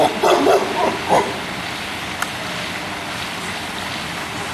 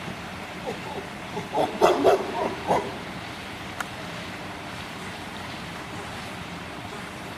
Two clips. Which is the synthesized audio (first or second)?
second